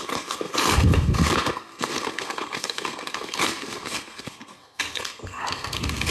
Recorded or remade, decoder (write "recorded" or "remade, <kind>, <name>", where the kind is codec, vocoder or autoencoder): remade, codec, SNAC